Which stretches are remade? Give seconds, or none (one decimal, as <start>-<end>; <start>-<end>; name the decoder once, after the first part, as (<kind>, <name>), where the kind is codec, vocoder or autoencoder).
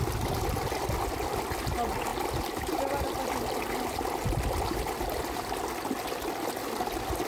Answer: none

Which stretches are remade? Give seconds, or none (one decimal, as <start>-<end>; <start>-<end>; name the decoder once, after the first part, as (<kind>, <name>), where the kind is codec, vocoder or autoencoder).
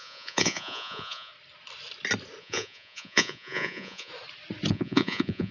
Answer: 0.0-1.3 (vocoder, Vocos); 2.4-4.1; 4.7-5.5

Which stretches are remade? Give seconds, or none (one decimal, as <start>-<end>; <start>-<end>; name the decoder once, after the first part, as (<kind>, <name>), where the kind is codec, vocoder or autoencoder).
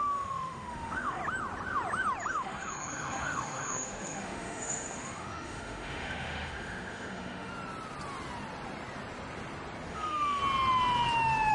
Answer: 0.0-1.2 (autoencoder, DAC-VAE); 2.3-7.5; 9.9-10.4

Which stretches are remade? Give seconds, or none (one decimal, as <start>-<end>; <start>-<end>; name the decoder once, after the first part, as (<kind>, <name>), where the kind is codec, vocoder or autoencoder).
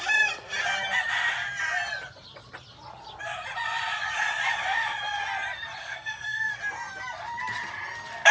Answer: 5.8-6.6 (codec, SNAC)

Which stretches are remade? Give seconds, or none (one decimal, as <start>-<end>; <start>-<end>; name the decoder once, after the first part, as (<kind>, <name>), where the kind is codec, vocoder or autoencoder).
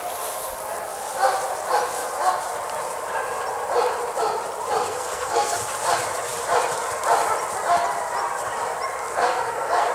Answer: 4.8-5.6 (codec, SNAC); 9.1-9.9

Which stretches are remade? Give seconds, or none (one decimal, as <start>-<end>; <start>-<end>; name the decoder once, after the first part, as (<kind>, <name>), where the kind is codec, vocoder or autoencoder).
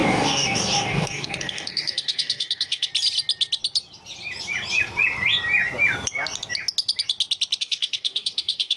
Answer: 0.0-2.9 (codec, DAC); 7.6-8.8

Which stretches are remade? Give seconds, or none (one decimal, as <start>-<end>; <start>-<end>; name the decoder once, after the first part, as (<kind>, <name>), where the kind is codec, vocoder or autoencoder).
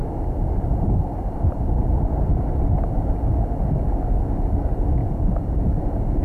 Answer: 0.0-2.8 (vocoder, BigVGAN v2); 5.0-5.8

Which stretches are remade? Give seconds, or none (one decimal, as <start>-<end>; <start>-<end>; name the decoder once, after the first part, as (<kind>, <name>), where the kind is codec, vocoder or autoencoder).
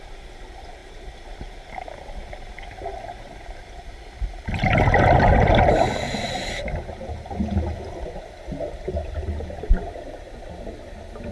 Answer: none